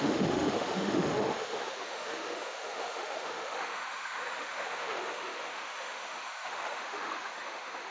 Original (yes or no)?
no